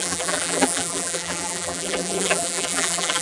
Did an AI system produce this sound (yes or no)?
yes